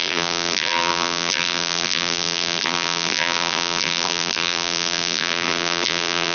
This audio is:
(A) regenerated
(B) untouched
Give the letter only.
A